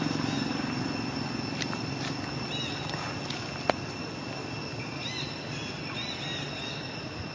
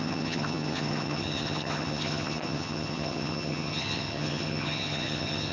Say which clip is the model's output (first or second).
second